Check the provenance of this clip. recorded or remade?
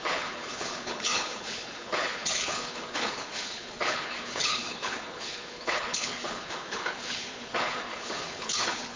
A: remade